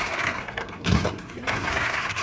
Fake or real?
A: fake